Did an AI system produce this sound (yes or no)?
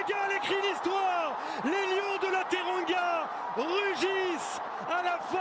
no